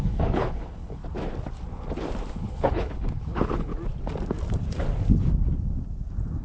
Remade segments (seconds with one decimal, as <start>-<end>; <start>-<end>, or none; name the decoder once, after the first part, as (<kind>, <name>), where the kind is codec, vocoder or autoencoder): 0.0-1.0 (codec, HILCodec); 2.3-3.7